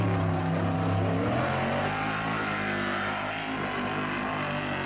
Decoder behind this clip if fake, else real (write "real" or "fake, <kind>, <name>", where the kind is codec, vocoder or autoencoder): real